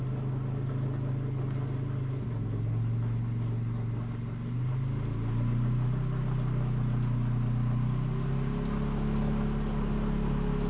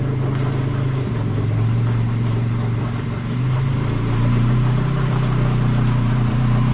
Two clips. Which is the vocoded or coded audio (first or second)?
second